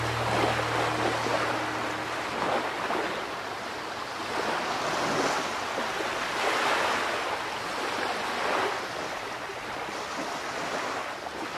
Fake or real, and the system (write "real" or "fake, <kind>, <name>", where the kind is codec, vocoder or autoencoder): real